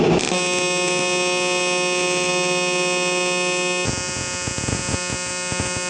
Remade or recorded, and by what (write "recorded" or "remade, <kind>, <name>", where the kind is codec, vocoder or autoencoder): recorded